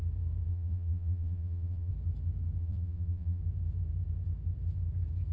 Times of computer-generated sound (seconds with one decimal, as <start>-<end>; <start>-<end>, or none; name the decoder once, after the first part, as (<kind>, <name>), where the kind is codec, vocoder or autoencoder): 0.5-1.9 (vocoder, BigVGAN v2); 2.6-3.4